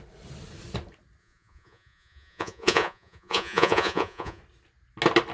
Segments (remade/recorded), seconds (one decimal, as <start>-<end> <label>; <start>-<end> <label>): 0.0-1.2 recorded; 1.2-4.4 remade; 4.4-5.3 recorded